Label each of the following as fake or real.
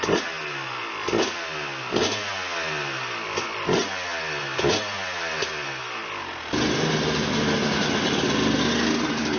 real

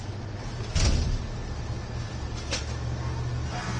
real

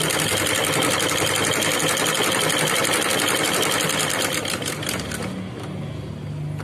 real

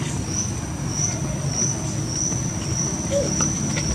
real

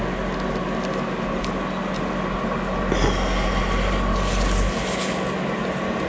real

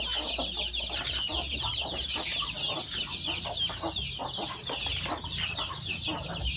real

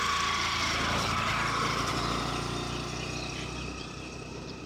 fake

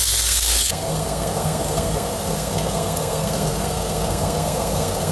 fake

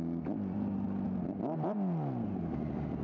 real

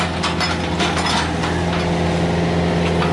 real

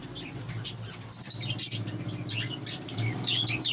real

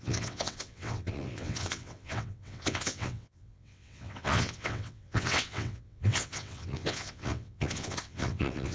fake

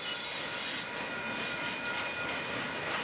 real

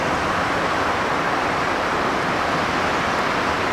real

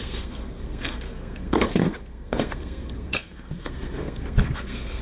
fake